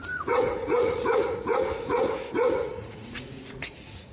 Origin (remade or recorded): remade